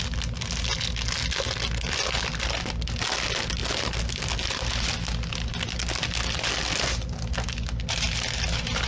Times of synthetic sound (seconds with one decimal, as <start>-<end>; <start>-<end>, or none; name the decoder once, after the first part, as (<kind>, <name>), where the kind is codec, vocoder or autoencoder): none